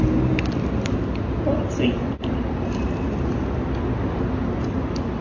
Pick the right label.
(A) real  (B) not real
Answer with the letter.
A